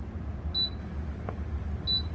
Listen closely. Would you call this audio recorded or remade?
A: recorded